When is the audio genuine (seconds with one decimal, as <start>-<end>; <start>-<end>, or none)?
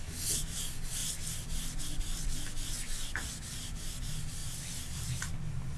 0.0-5.8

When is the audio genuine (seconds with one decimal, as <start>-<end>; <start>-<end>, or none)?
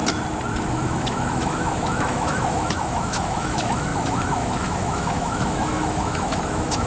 0.0-0.7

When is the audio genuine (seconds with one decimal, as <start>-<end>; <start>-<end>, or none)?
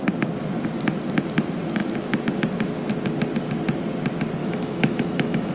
0.0-4.4